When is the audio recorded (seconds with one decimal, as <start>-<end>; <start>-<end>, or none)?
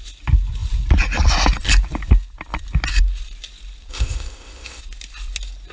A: 0.0-3.9; 4.8-5.7